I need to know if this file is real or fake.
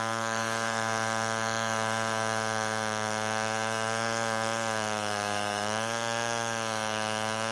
fake